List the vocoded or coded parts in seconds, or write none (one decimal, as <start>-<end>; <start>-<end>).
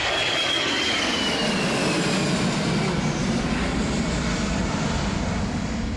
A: 0.0-1.8; 5.4-6.0